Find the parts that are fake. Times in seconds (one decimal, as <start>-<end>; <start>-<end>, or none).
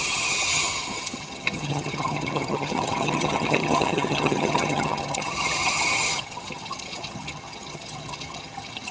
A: 0.0-8.9